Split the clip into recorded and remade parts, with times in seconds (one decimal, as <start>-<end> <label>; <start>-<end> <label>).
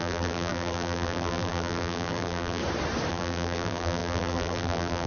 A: 0.0-2.6 remade; 2.6-3.1 recorded; 3.1-5.1 remade